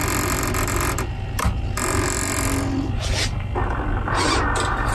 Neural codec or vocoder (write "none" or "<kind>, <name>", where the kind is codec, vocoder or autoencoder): none